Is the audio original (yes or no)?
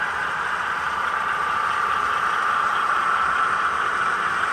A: yes